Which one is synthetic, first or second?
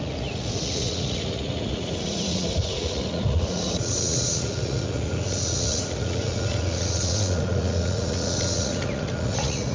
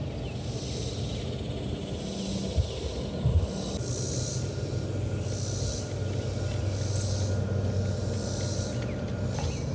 first